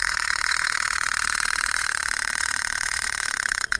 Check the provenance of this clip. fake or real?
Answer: fake